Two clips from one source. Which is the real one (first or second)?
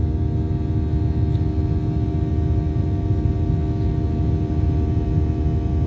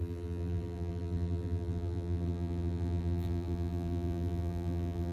first